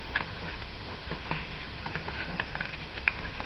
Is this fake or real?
fake